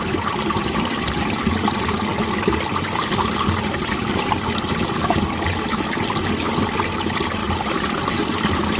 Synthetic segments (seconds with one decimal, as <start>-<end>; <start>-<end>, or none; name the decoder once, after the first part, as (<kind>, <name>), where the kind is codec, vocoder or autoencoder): none